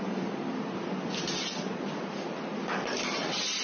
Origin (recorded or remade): recorded